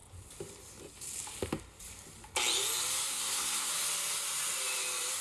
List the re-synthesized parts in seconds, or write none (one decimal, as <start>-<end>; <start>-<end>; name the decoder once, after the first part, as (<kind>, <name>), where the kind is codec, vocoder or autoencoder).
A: 3.1-3.7 (codec, SNAC)